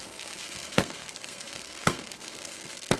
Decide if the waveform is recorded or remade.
remade